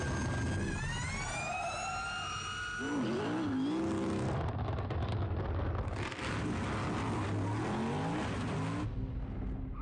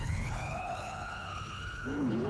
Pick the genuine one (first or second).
first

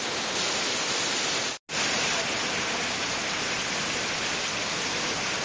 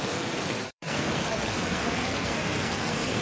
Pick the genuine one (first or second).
first